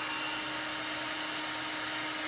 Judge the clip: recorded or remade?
recorded